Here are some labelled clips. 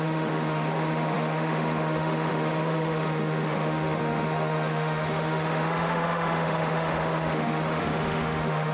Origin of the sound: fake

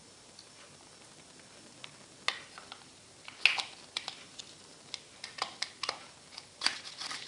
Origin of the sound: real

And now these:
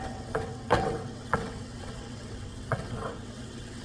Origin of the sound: fake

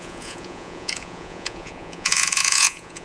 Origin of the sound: fake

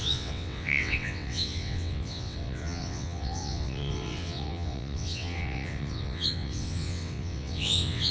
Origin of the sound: fake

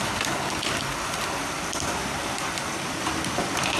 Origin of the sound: real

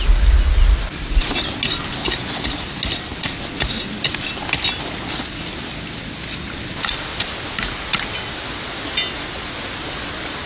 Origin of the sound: real